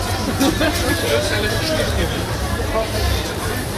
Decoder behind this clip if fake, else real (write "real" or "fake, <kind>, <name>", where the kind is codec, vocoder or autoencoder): fake, vocoder, BigVGAN v2